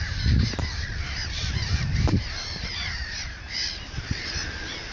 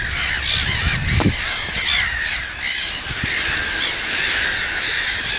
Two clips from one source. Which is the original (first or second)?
second